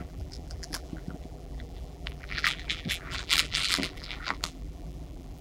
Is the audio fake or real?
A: fake